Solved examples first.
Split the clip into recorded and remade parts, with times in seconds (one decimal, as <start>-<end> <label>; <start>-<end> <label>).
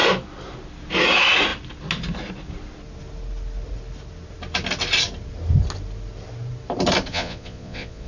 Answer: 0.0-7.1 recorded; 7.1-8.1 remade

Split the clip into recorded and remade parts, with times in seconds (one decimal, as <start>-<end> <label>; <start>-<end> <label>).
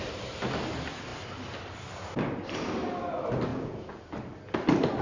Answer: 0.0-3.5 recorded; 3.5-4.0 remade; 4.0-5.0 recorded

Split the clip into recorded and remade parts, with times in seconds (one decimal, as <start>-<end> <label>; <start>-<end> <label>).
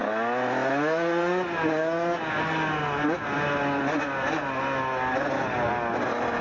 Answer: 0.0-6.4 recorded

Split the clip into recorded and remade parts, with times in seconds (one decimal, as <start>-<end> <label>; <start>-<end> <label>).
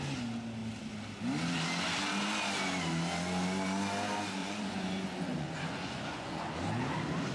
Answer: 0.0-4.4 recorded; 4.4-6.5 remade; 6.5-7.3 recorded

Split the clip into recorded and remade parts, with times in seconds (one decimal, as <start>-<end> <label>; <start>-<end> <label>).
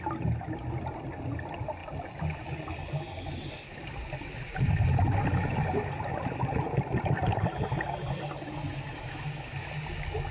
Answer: 0.0-10.3 recorded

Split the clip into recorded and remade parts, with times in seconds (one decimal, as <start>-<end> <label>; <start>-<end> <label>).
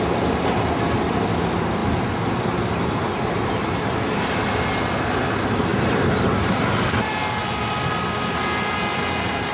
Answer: 0.0-9.5 recorded